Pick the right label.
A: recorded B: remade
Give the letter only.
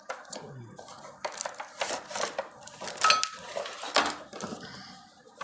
A